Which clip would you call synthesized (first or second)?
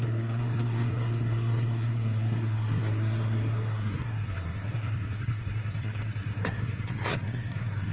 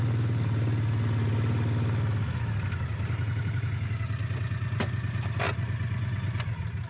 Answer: first